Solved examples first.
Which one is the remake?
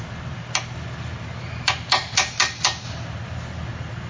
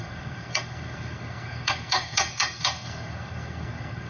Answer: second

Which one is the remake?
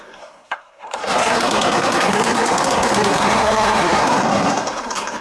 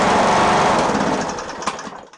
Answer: first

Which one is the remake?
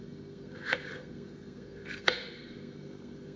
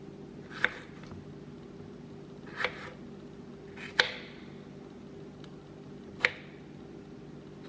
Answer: first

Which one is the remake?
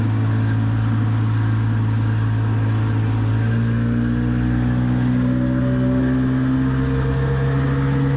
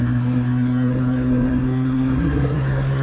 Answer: second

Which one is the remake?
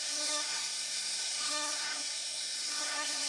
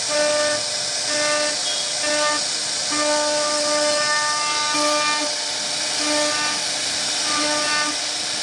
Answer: first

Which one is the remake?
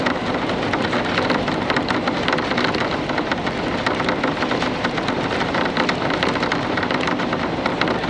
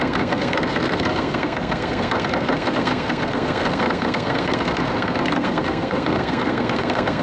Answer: second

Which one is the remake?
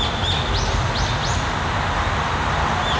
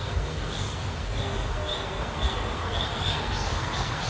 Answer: second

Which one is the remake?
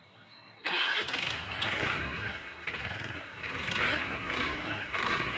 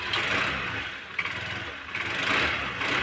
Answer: first